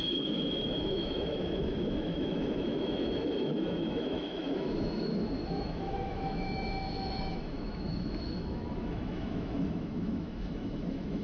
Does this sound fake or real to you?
fake